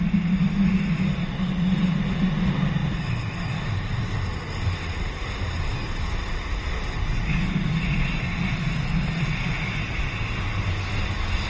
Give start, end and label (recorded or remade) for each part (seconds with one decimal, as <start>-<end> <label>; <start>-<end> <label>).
0.0-11.5 recorded